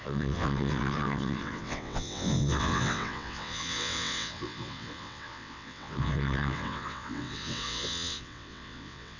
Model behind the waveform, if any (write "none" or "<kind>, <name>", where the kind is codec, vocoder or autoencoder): vocoder, WaveNeXt